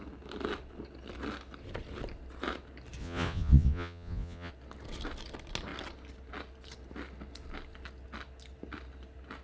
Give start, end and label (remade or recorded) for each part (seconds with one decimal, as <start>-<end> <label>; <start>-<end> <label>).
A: 0.0-3.0 recorded; 3.0-4.5 remade; 4.5-9.4 recorded